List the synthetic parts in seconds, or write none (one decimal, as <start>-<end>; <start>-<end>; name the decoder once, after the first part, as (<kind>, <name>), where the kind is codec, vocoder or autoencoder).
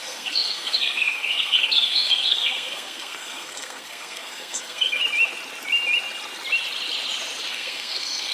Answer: 0.0-5.0 (codec, SNAC); 7.5-8.3